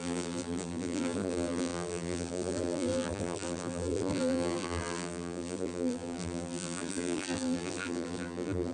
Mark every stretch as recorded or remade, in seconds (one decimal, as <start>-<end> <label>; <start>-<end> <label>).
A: 0.0-8.7 remade